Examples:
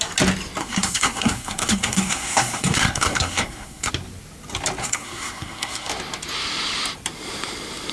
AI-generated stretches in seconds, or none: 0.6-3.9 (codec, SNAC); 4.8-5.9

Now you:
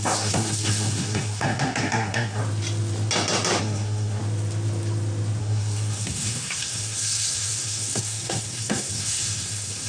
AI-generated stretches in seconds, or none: 0.0-2.4 (codec, SNAC); 3.6-4.2; 5.4-9.9

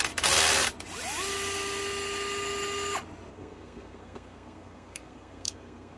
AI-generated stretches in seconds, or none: 3.3-6.0 (codec, SNAC)

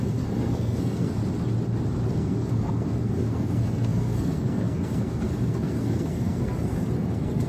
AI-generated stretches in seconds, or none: 0.0-1.2 (codec, SNAC); 2.1-7.5

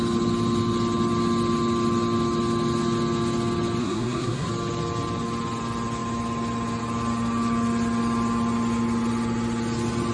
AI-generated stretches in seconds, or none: 3.8-4.5 (codec, SNAC)

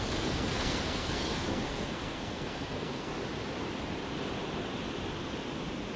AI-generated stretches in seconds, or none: 0.0-3.1 (codec, SNAC)

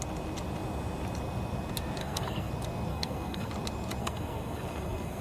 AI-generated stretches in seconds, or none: 2.0-2.5 (codec, SNAC); 2.9-3.5; 4.0-5.2